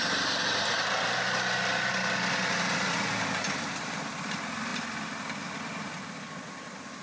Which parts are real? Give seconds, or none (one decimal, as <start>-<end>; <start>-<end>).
0.0-7.0